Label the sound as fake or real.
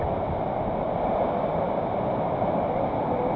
real